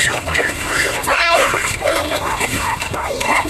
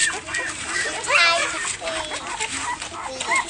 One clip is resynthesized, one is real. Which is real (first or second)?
second